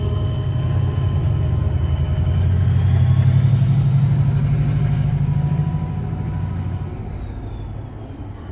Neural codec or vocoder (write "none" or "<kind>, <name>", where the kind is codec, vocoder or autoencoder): none